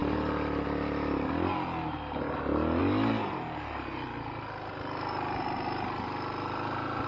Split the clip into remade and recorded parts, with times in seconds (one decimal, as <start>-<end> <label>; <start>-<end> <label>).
0.0-7.1 recorded